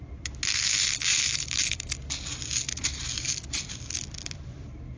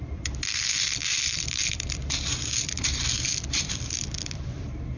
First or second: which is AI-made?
second